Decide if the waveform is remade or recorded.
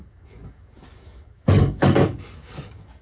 remade